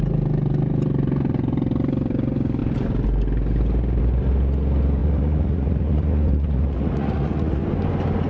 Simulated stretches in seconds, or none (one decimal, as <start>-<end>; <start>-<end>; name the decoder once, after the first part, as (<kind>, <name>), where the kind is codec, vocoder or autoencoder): 5.0-7.6 (vocoder, Vocos)